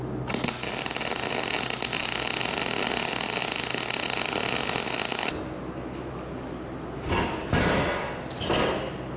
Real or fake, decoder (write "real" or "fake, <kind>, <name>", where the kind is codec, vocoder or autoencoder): real